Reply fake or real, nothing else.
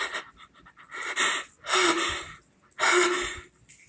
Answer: real